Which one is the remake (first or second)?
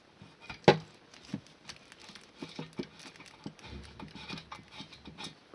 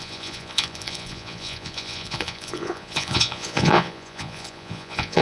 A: second